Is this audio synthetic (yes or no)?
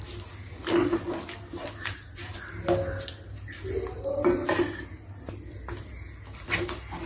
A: no